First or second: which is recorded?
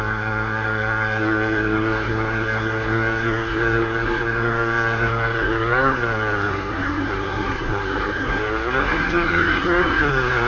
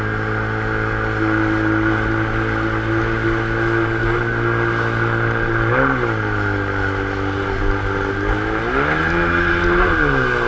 second